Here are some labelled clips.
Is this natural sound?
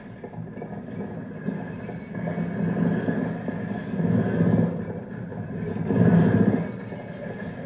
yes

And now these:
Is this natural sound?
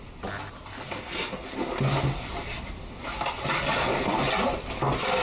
yes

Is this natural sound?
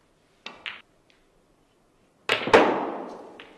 yes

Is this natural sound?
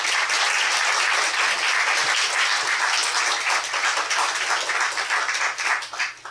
yes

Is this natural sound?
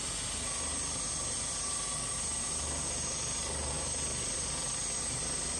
yes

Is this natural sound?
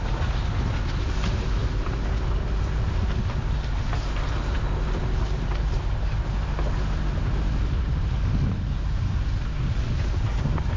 yes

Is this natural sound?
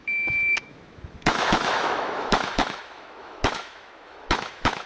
no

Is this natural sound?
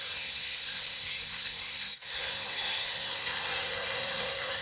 no